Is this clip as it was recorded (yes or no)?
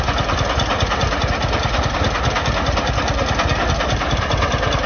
yes